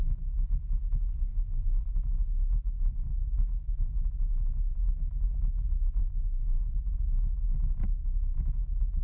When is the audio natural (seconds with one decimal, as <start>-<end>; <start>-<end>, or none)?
0.0-1.3; 1.8-6.0; 6.6-9.0

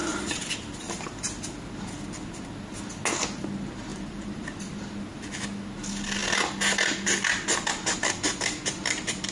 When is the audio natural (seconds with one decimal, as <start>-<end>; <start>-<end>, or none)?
1.0-3.9; 4.7-9.3